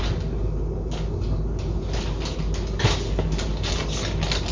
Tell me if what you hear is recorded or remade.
recorded